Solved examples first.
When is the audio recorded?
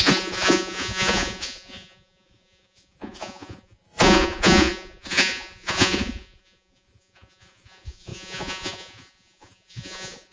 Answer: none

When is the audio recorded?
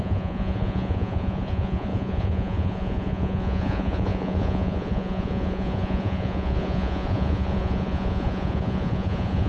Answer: none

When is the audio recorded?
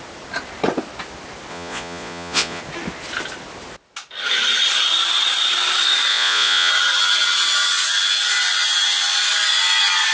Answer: 0.0-1.5; 2.6-6.1; 6.7-10.1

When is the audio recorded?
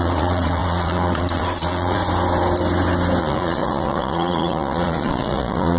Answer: 2.0-3.2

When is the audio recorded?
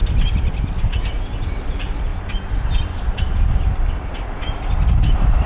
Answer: 0.0-5.5